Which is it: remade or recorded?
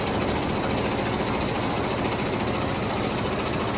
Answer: recorded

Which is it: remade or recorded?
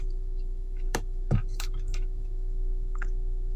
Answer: remade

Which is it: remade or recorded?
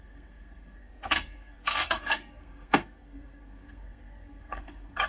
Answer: remade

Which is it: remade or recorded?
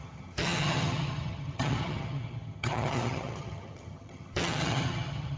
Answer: remade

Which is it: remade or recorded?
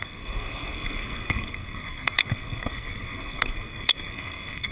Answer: remade